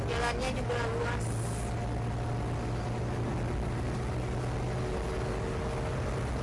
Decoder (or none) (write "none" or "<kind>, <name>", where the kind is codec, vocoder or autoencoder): none